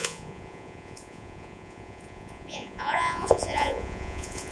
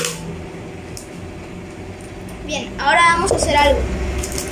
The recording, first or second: second